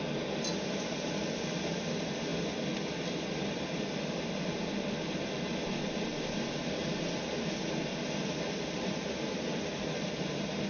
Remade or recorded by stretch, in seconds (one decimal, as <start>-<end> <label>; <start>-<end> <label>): 0.0-10.7 recorded